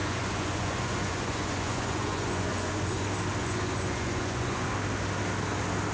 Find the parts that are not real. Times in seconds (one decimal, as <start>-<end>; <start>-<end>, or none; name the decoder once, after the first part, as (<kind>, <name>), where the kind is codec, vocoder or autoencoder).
0.0-3.0 (vocoder, Vocos); 3.4-4.7